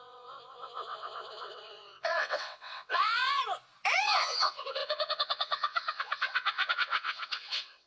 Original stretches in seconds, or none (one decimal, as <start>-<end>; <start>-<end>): 3.4-4.0